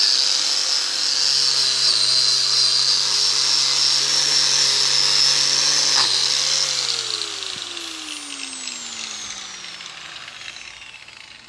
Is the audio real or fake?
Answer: real